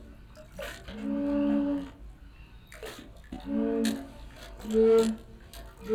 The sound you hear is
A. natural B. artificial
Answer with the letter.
A